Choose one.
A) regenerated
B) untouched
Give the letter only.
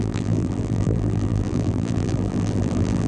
A